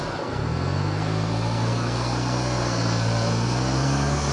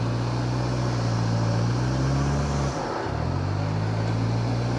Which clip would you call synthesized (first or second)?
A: first